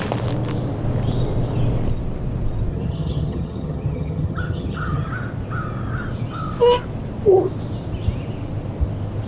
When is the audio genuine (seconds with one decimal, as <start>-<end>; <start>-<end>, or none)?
0.0-2.7; 5.1-9.3